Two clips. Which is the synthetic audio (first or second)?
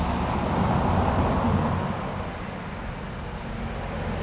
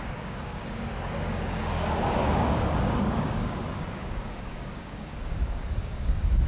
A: second